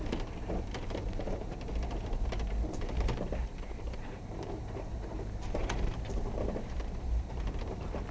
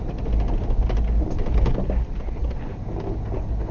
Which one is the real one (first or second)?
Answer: second